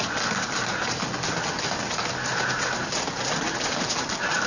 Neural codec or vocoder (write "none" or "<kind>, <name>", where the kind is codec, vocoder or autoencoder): none